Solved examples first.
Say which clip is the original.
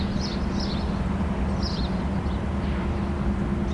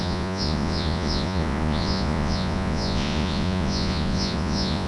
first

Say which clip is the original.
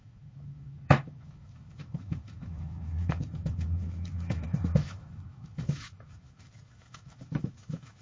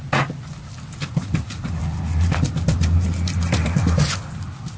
second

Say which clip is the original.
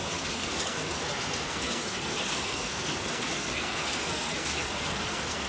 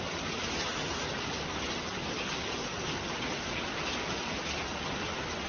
second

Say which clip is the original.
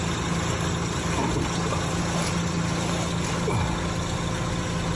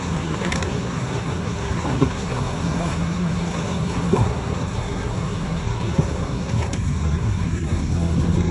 first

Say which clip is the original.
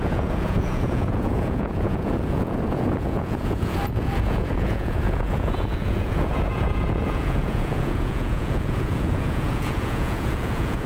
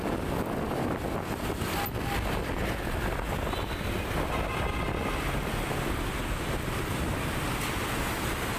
second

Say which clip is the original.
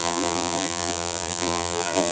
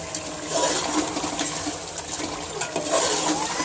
second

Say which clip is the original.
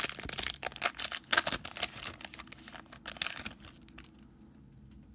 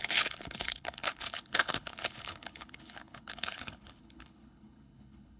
first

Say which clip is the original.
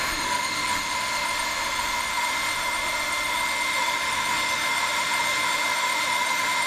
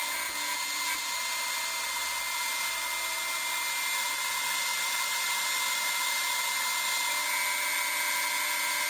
second